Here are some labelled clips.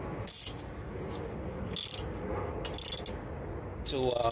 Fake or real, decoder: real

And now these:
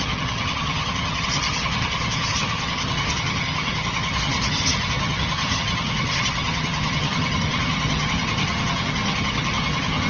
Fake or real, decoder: fake, vocoder, HiFi-GAN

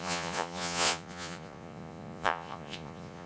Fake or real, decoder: fake, vocoder, Vocos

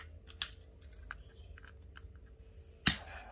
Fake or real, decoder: real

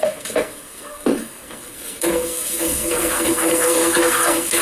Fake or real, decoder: fake, codec, SNAC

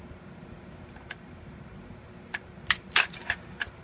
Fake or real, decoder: fake, vocoder, BigVGAN v2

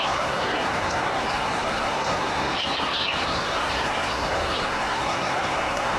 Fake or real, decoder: fake, codec, SNAC